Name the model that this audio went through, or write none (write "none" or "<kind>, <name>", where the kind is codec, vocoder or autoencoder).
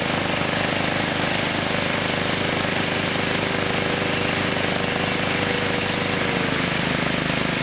none